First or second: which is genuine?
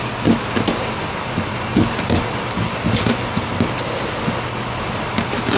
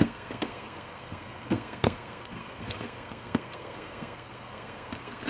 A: first